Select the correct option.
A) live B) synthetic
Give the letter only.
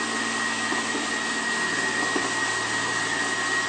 A